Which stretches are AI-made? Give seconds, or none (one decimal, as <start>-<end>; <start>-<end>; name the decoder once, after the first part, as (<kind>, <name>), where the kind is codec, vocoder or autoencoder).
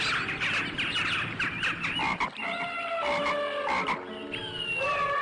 none